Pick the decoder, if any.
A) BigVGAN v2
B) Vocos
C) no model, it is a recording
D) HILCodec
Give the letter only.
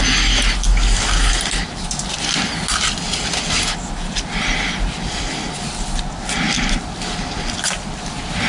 C